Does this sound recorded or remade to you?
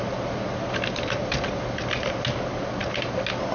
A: recorded